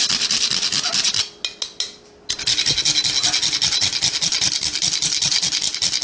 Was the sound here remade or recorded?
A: recorded